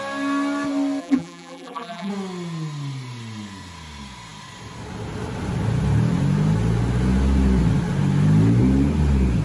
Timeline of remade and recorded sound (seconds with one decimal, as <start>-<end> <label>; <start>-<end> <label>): 0.0-1.0 recorded; 1.0-2.1 remade; 2.1-9.4 recorded